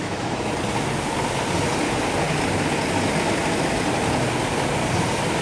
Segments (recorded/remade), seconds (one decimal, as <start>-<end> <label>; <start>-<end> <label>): 0.0-0.5 remade; 0.5-5.4 recorded